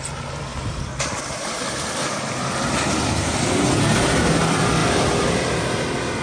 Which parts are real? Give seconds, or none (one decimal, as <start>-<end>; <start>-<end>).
0.0-4.8; 5.6-6.2